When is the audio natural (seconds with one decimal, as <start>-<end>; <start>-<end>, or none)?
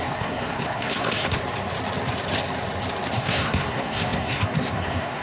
1.4-3.1